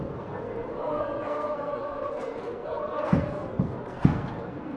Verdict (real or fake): fake